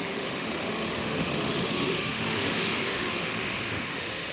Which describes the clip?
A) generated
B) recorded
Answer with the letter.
A